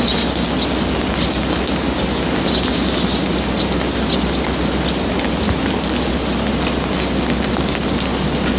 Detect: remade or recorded recorded